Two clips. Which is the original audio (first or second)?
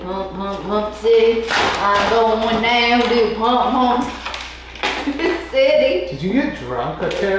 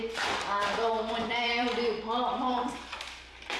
first